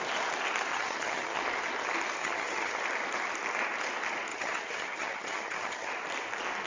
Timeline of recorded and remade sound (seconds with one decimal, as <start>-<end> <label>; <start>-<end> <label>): 0.0-0.7 recorded; 0.7-1.4 remade; 1.4-2.2 recorded; 2.2-2.8 remade; 2.8-4.3 recorded; 4.3-5.9 remade; 5.9-6.7 recorded